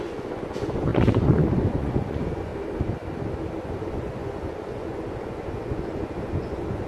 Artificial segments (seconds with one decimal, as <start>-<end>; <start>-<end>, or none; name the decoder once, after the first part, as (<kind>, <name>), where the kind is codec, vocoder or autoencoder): 0.0-2.5 (vocoder, Vocos); 3.6-6.9